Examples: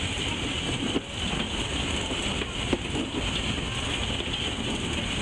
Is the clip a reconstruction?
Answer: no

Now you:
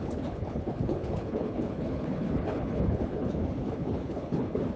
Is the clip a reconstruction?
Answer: yes